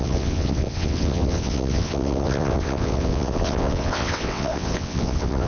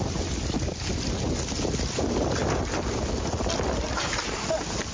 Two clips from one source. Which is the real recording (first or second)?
second